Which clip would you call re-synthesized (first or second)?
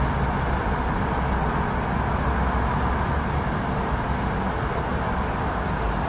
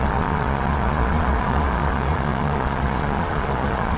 second